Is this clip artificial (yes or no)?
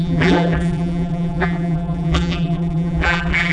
yes